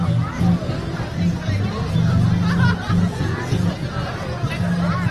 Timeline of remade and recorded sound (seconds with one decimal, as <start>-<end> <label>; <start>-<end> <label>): 0.0-2.8 recorded; 2.8-3.7 remade; 3.7-5.1 recorded

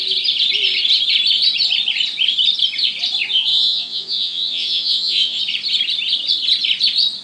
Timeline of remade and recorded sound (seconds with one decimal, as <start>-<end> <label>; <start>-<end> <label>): 0.0-3.5 recorded; 3.5-5.4 remade; 5.4-7.2 recorded

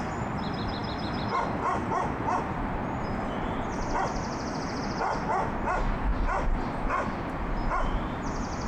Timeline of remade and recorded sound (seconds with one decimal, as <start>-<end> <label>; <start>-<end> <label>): 0.0-8.7 recorded

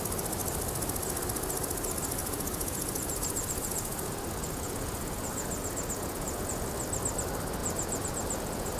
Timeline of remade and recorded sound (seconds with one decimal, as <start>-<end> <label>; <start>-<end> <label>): 0.0-2.2 recorded; 2.2-6.7 remade; 6.7-7.6 recorded; 7.6-8.8 remade

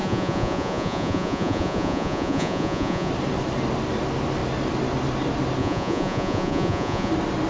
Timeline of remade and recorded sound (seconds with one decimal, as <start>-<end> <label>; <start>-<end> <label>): 0.0-3.1 remade; 3.1-5.6 recorded; 5.6-7.1 remade; 7.1-7.5 recorded

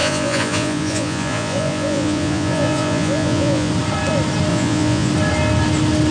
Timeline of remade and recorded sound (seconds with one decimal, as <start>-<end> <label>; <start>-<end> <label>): 0.0-3.7 remade; 3.7-4.5 recorded; 4.5-5.1 remade; 5.1-6.1 recorded

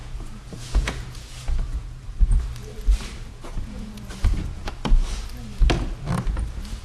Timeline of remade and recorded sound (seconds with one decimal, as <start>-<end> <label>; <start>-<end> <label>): 0.0-2.4 remade; 2.4-3.3 recorded; 3.3-4.7 remade; 4.7-6.8 recorded